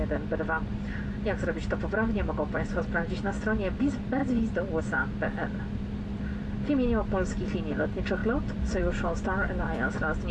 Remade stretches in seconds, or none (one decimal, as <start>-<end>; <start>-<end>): 4.2-4.8; 8.2-8.8